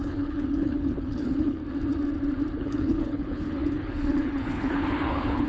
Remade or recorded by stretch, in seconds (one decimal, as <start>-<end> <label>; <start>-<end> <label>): 0.0-1.6 remade; 1.6-2.6 recorded; 2.6-5.5 remade